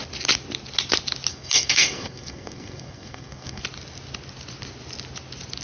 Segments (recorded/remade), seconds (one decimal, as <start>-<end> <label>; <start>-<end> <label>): 0.0-1.3 recorded; 1.3-3.6 remade; 3.6-5.6 recorded